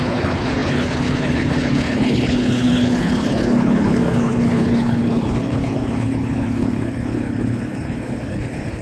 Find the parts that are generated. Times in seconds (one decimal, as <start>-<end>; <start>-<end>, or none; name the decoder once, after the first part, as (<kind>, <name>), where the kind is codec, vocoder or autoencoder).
0.0-8.8 (codec, HILCodec)